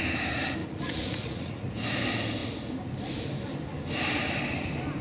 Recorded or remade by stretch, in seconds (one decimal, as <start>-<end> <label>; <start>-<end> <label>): 0.0-0.6 recorded; 0.6-1.7 remade; 1.7-5.0 recorded